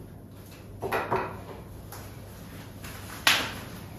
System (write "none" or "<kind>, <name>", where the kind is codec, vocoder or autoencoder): none